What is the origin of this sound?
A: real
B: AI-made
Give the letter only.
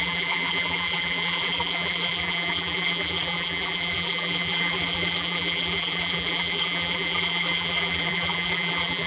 B